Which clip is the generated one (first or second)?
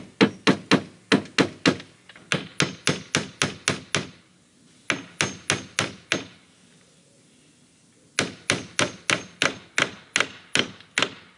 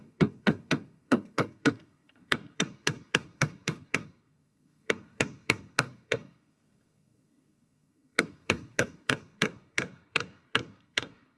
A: second